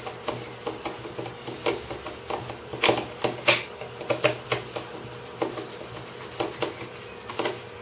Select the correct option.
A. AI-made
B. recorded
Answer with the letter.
B